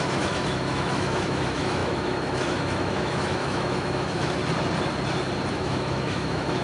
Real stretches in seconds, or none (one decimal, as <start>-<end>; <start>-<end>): 4.4-5.5